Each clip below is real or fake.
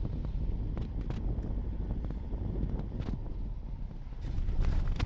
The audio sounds real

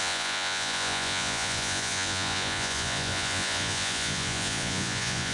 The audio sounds fake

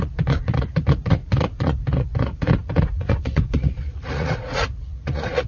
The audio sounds fake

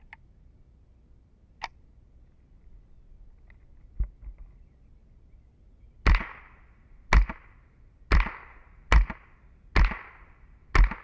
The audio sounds real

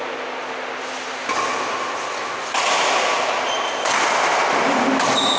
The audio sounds real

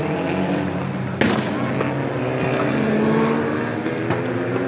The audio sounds real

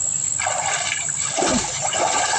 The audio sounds real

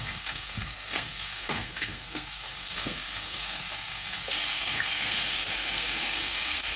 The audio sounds fake